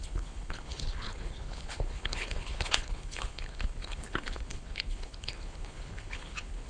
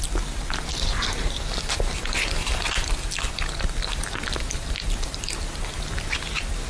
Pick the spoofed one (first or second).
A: first